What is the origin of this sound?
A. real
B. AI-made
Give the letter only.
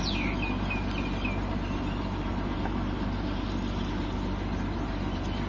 A